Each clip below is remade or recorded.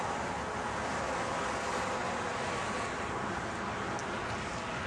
recorded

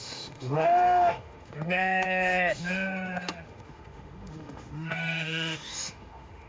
remade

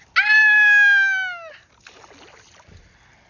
recorded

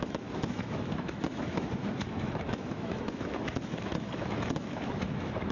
remade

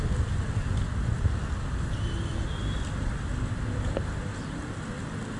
recorded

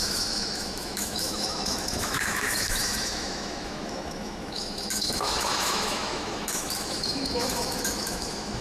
remade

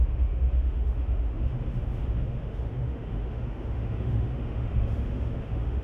remade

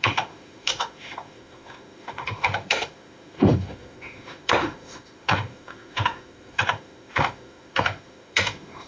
remade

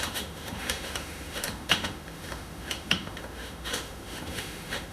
remade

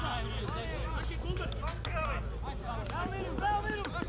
recorded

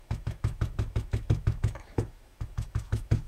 remade